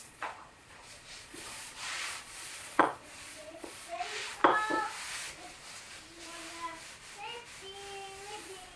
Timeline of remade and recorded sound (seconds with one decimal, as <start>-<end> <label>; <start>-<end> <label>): 0.0-4.4 remade; 4.4-8.3 recorded; 8.3-8.8 remade